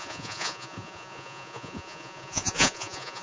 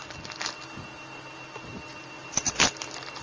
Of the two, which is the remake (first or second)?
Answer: first